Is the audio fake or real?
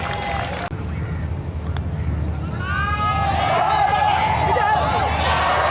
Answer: real